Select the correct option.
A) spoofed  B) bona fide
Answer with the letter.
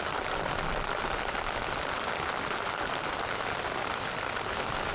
B